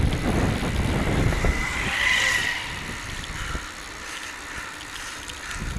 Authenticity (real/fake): real